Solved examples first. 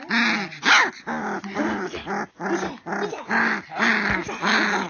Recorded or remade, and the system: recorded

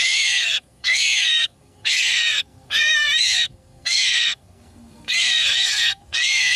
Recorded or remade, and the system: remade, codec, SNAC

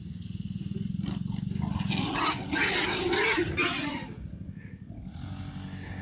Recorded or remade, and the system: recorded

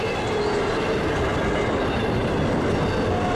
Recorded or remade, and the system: recorded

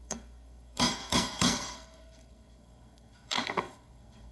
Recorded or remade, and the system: remade, codec, SNAC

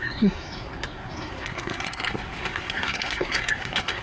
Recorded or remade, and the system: remade, codec, SNAC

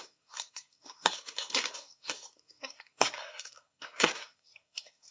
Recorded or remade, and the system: remade, codec, SNAC